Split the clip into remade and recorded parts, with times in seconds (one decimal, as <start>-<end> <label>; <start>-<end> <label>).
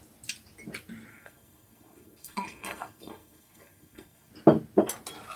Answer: 0.0-1.1 recorded; 1.1-4.3 remade; 4.3-5.4 recorded